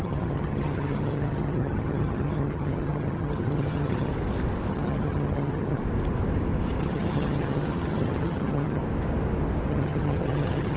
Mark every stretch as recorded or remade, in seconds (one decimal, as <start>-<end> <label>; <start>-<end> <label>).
0.0-4.1 remade; 4.1-4.7 recorded; 4.7-5.8 remade; 5.8-6.8 recorded; 6.8-8.8 remade; 8.8-9.7 recorded; 9.7-10.8 remade